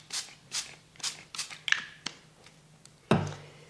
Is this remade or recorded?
recorded